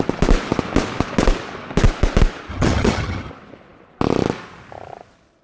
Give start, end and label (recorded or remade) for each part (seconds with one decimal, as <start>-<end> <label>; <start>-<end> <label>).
0.0-2.5 recorded; 2.5-3.3 remade; 3.3-5.4 recorded